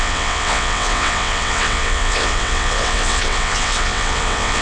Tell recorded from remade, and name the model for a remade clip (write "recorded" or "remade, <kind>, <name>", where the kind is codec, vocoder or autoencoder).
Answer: remade, vocoder, WaveNeXt